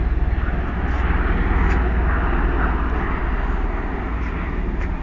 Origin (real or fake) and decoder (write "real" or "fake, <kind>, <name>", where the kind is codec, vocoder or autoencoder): real